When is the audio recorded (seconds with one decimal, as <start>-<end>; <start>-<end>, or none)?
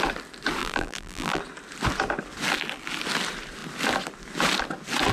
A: 0.0-0.6; 1.4-5.1